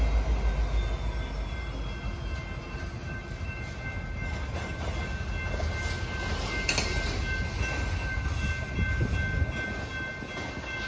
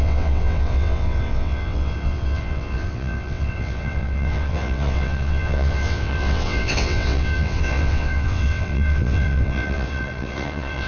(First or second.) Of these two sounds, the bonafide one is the first